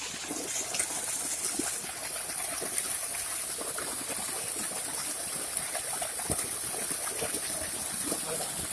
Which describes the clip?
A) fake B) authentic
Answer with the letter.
B